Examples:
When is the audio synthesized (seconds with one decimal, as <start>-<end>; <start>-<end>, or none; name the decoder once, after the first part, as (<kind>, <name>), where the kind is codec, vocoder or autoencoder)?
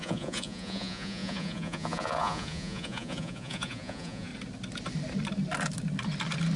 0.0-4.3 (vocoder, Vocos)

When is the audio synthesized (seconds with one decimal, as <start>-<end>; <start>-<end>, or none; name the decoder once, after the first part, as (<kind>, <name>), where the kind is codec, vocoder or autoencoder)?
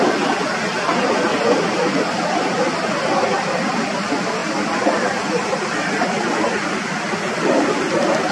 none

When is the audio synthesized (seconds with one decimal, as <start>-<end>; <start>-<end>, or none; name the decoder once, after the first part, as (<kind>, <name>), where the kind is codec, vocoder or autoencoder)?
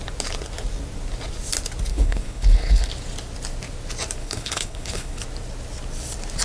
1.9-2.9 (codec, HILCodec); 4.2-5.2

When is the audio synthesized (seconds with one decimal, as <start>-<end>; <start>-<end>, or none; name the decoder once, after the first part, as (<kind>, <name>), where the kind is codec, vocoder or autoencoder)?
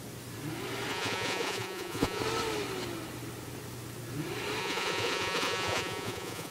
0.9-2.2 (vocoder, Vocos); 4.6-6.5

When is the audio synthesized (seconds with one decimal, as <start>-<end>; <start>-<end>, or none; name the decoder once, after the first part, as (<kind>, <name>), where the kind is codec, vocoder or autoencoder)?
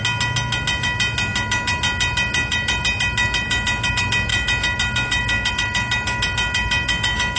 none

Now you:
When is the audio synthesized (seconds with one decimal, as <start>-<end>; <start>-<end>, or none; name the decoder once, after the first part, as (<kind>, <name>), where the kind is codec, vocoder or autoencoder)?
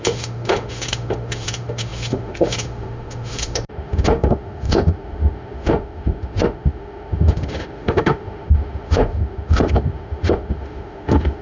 0.0-11.4 (autoencoder, DAC-VAE)